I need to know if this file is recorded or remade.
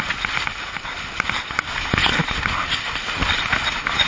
recorded